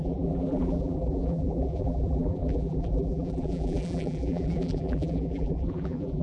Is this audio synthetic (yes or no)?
yes